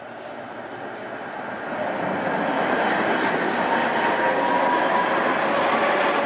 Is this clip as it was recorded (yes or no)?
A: yes